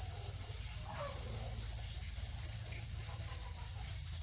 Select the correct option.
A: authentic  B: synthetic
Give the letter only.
A